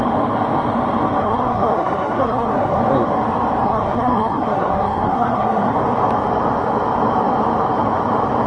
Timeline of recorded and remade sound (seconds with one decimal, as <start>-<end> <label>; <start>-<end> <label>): 0.0-1.2 recorded; 1.2-2.8 remade; 2.8-3.6 recorded; 3.6-5.7 remade; 5.7-8.5 recorded